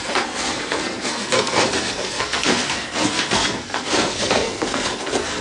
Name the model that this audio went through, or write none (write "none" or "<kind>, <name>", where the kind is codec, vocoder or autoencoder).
codec, SNAC